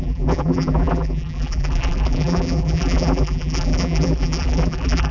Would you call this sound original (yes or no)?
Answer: no